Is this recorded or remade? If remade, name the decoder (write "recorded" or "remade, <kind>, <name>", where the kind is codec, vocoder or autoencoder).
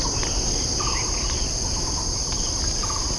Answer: recorded